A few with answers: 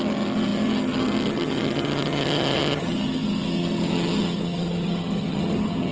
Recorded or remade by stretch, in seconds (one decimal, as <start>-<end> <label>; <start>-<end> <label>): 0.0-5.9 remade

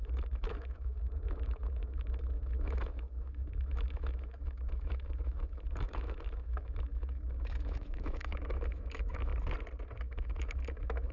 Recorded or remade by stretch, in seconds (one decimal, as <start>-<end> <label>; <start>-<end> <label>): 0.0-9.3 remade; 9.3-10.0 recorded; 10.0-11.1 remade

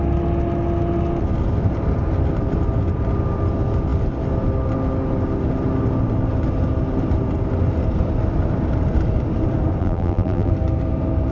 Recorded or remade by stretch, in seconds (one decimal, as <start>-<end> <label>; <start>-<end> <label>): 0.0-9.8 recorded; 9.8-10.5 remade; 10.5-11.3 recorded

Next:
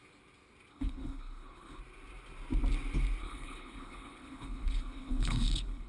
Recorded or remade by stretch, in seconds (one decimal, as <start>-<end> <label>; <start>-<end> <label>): 0.0-0.7 recorded; 0.7-1.8 remade; 1.8-3.2 recorded; 3.2-5.9 remade